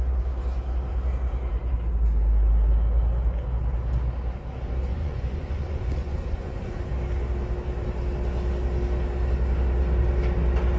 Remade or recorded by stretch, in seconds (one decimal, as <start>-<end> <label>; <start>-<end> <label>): 0.0-4.9 recorded; 4.9-6.8 remade; 6.8-10.8 recorded